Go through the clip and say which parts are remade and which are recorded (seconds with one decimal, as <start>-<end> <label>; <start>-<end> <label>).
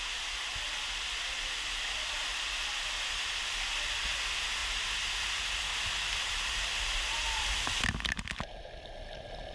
0.0-9.5 recorded